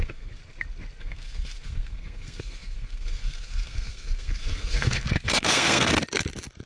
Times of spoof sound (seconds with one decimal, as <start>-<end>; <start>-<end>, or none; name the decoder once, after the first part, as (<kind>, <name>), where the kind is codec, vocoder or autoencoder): 0.0-0.4 (codec, SNAC); 1.0-5.9